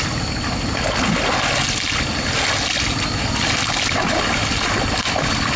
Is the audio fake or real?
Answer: real